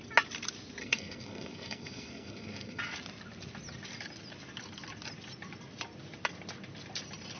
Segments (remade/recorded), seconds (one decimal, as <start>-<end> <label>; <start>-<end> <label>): 0.0-0.8 recorded; 0.8-2.8 remade; 2.8-7.4 recorded